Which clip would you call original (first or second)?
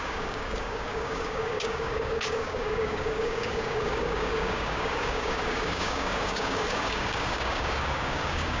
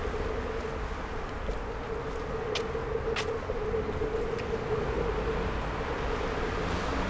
second